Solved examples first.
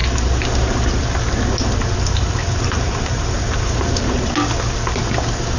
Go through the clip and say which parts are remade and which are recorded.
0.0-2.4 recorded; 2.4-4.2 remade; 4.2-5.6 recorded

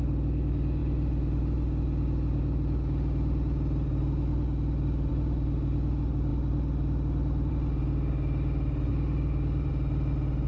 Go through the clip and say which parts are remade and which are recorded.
0.0-8.9 recorded; 8.9-9.7 remade; 9.7-10.5 recorded

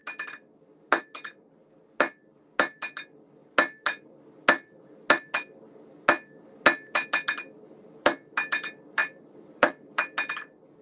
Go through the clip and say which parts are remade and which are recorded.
0.0-9.0 recorded; 9.0-9.8 remade; 9.8-10.8 recorded